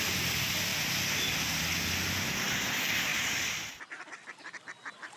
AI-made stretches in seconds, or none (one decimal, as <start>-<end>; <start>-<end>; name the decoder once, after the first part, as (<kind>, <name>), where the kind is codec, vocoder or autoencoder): 0.7-1.2 (vocoder, BigVGAN v2)